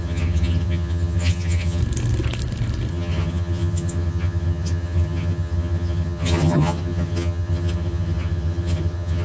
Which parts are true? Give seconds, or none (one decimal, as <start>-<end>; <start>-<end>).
1.8-2.9